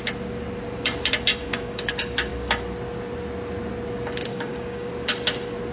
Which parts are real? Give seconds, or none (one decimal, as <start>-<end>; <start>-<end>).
0.0-1.4; 1.9-4.3; 4.9-5.7